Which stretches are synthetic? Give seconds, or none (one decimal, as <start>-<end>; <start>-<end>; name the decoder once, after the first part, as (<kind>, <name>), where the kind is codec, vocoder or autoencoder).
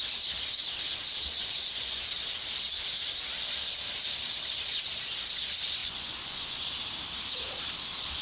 1.4-2.0 (vocoder, Vocos); 5.8-6.7